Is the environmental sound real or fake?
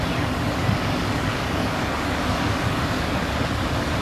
fake